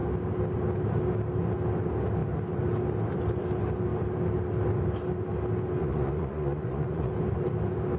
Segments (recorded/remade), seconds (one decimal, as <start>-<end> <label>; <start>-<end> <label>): 0.0-5.8 recorded; 5.8-7.1 remade; 7.1-8.0 recorded